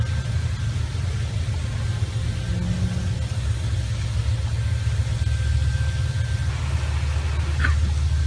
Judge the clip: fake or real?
real